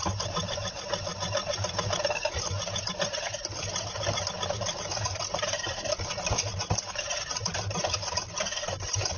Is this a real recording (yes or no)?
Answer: yes